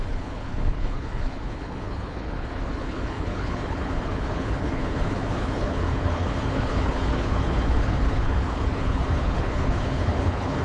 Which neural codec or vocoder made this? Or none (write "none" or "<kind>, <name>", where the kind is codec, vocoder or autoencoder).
codec, HILCodec